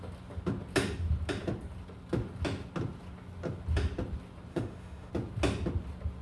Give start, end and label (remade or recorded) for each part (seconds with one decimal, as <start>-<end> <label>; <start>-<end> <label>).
0.0-4.5 recorded; 4.5-5.1 remade; 5.1-6.2 recorded

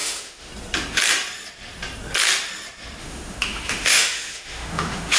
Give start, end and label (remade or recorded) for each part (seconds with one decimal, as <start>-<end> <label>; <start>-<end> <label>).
0.0-0.5 remade; 0.5-3.0 recorded; 3.0-5.2 remade

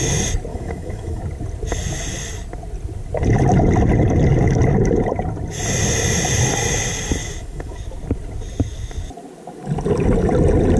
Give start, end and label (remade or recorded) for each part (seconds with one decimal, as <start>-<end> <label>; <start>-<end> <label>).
0.0-0.5 recorded; 0.5-1.2 remade; 1.2-7.2 recorded; 7.2-7.8 remade; 7.8-10.8 recorded

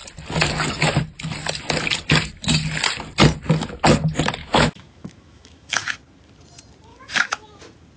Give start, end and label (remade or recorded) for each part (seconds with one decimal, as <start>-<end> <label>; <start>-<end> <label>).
0.0-4.4 recorded; 4.4-5.9 remade; 5.9-6.9 recorded; 6.9-7.5 remade; 7.5-8.0 recorded

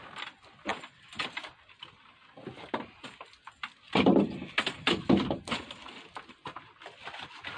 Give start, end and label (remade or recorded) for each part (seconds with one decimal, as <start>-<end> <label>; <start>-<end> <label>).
0.0-7.6 recorded